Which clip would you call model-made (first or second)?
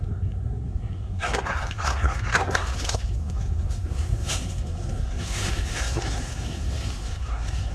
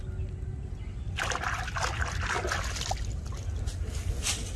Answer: first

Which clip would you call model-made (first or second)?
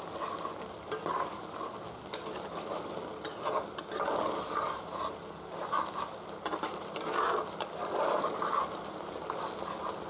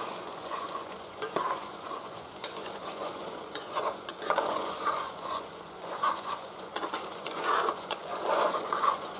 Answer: second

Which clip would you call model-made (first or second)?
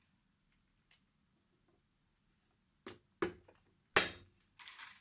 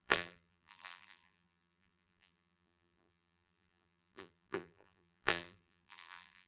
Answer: second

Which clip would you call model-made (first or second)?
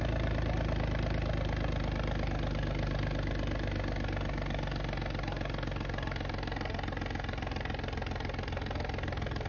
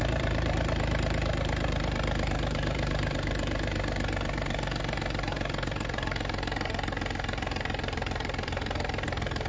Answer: second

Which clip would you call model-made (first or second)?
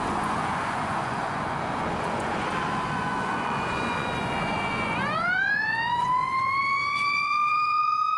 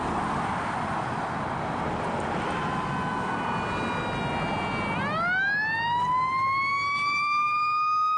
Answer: first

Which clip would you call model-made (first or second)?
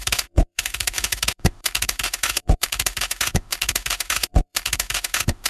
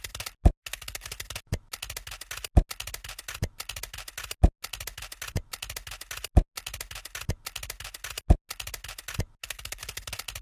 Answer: first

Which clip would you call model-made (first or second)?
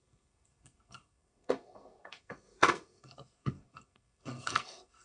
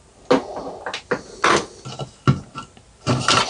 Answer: first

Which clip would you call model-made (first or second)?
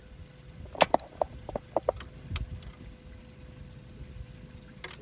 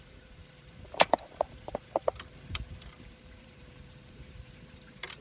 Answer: second